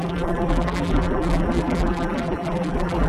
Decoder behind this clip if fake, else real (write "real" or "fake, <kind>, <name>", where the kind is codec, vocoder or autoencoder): fake, vocoder, BigVGAN v2